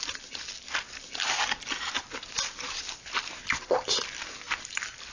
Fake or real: real